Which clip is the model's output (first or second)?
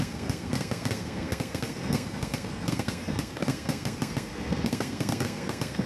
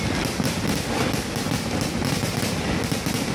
first